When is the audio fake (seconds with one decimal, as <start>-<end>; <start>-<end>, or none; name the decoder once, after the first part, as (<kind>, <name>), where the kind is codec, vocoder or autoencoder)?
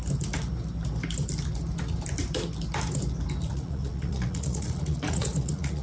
3.5-5.8 (vocoder, Vocos)